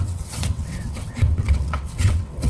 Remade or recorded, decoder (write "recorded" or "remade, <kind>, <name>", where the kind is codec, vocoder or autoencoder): remade, vocoder, WaveNeXt